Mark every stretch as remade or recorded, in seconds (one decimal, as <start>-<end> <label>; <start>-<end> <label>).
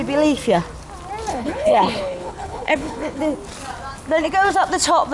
0.0-1.3 recorded; 1.3-3.2 remade; 3.2-5.1 recorded